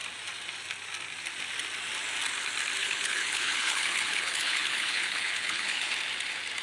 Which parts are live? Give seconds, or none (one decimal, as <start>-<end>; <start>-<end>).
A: 0.0-2.8; 5.9-6.6